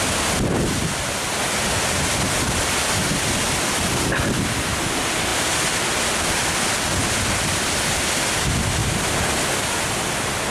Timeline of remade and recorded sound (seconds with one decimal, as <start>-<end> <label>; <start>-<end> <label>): 0.0-10.5 recorded